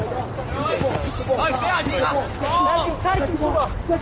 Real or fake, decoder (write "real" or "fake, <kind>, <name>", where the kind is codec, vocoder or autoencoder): real